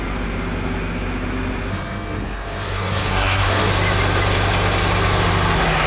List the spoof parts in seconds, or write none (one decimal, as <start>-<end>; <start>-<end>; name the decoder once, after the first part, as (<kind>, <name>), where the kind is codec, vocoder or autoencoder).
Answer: 1.7-3.7 (codec, SNAC)